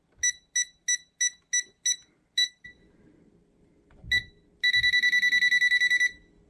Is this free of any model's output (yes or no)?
yes